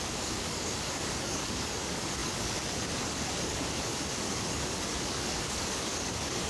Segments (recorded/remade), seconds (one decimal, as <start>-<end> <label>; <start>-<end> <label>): 0.0-6.5 remade